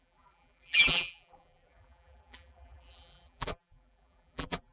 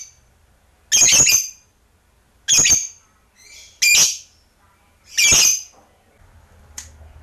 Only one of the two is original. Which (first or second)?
second